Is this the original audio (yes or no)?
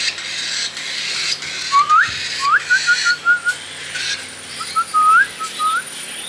yes